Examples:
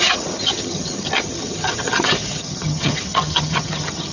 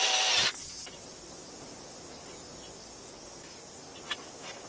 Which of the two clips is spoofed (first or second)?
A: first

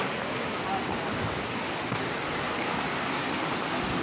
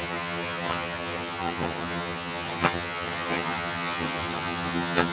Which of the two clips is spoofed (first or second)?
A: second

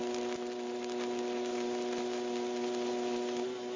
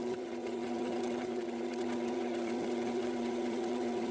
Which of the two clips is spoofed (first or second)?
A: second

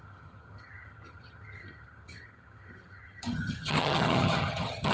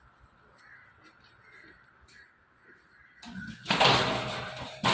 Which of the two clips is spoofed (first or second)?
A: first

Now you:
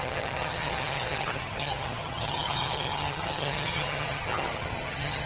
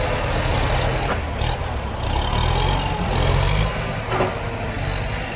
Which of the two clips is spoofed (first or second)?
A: first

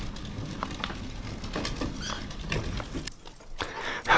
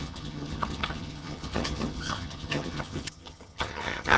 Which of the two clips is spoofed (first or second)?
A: second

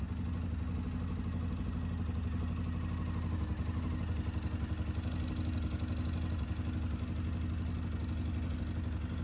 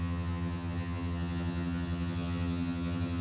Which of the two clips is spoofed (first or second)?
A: second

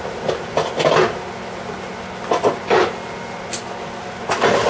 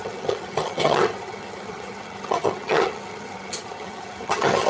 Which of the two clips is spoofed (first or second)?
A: second